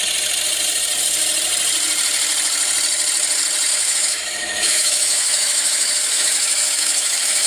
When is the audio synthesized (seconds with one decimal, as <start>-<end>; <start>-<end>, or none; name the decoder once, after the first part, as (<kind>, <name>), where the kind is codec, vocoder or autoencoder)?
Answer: 3.7-7.5 (autoencoder, DAC-VAE)